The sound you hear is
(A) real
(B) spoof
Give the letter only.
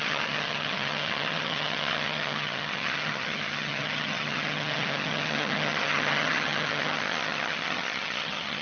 B